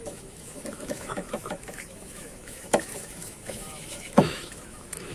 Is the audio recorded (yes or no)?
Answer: no